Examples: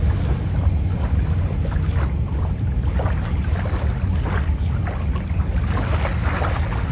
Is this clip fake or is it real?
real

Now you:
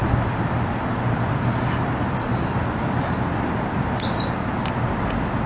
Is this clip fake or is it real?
real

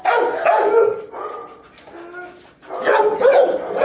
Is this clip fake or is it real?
real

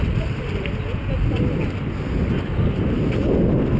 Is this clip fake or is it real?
real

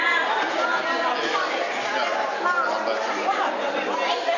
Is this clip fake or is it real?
real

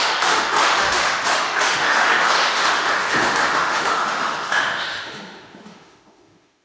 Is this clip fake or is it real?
fake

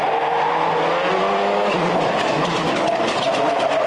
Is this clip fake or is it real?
real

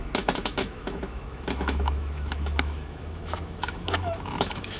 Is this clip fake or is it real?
fake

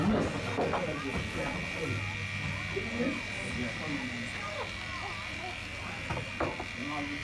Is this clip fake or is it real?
real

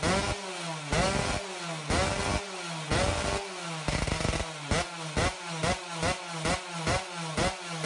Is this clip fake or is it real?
real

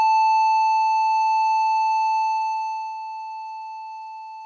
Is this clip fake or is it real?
fake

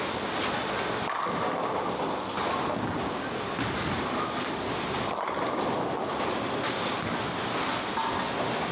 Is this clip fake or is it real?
real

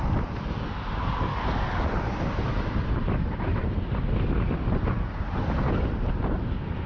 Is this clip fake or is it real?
real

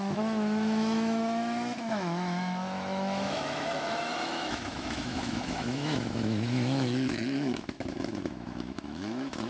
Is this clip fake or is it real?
fake